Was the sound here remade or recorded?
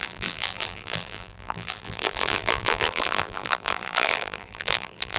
remade